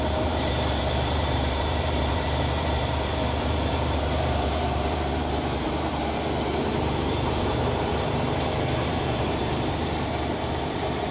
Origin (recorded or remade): remade